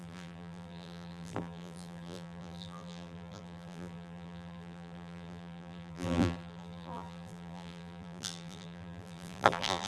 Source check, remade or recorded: remade